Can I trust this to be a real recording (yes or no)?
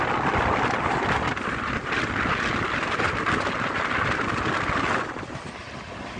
yes